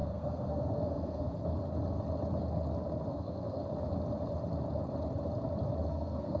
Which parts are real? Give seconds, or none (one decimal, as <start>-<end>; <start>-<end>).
1.3-3.1; 3.6-5.9